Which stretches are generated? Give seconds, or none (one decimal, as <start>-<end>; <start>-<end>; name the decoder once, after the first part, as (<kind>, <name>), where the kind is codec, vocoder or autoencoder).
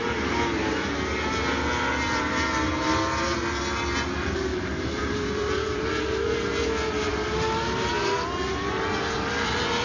4.5-5.9 (vocoder, BigVGAN v2)